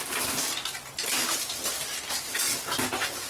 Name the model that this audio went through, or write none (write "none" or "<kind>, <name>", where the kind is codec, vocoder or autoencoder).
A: none